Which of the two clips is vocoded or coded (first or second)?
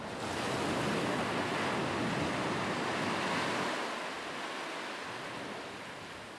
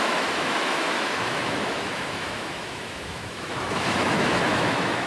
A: second